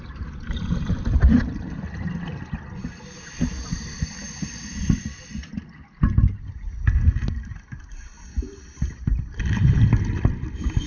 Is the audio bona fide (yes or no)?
yes